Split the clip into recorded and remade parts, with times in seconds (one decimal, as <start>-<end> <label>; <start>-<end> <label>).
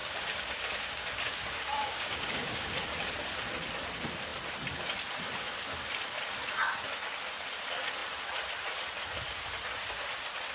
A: 0.0-2.7 remade; 2.7-10.5 recorded